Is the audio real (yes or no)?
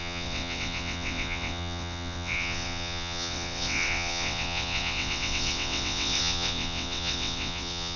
no